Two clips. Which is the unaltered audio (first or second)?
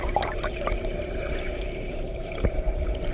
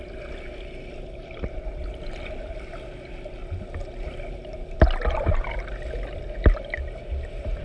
second